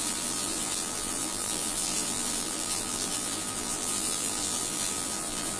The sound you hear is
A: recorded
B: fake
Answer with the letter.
B